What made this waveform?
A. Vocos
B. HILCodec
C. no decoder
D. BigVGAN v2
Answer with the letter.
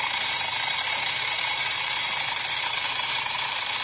D